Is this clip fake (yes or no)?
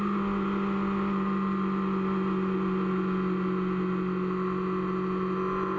no